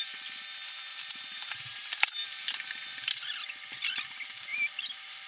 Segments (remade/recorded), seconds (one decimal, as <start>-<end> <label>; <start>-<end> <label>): 0.0-0.9 recorded; 0.9-2.0 remade; 2.0-4.5 recorded; 4.5-5.3 remade